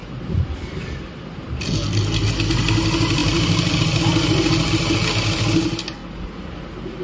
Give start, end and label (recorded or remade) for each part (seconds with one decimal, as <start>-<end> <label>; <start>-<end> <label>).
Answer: 0.0-1.3 remade; 1.3-3.2 recorded; 3.2-4.0 remade; 4.0-7.0 recorded